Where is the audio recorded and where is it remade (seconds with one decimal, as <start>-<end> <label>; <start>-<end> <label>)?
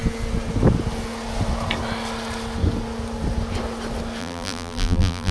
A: 0.0-4.2 recorded; 4.2-5.3 remade